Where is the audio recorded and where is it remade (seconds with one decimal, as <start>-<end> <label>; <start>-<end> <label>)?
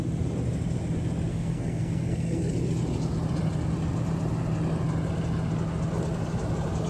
0.0-1.3 recorded; 1.3-2.5 remade; 2.5-6.9 recorded